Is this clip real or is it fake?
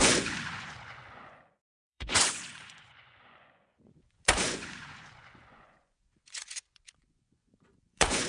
fake